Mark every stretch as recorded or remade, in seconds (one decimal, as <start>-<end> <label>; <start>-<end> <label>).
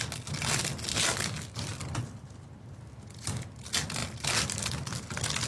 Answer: 0.0-1.7 recorded; 1.7-3.4 remade; 3.4-4.0 recorded; 4.0-5.0 remade; 5.0-5.5 recorded